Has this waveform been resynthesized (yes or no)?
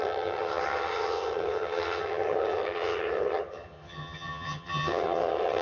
yes